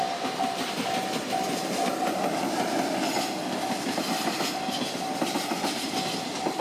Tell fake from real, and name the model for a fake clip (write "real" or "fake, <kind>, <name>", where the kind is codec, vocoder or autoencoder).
real